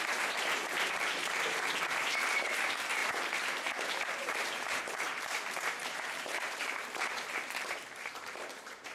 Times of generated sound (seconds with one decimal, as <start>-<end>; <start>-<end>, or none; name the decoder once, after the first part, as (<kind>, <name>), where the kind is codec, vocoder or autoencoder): 0.0-8.9 (vocoder, BigVGAN v2)